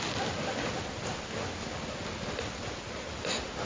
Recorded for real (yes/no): yes